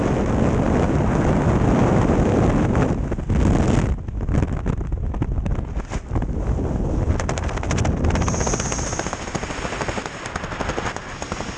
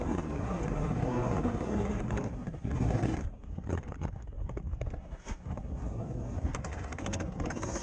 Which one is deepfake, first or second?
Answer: second